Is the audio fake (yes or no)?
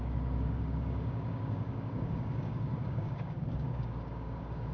yes